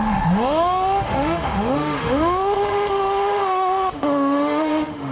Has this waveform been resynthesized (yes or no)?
yes